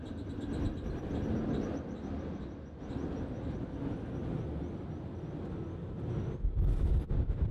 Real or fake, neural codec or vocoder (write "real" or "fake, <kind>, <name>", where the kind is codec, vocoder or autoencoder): real